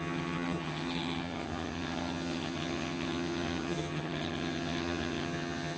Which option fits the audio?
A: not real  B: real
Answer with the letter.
A